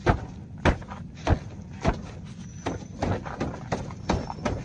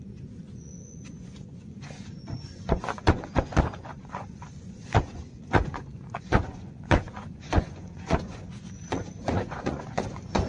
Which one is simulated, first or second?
second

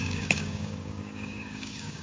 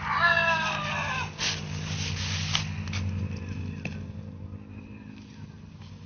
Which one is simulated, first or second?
first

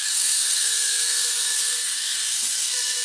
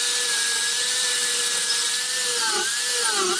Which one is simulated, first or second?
first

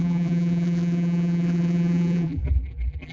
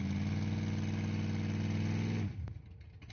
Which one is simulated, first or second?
first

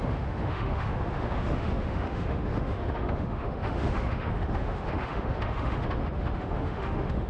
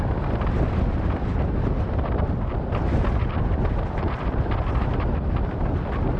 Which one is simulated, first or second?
first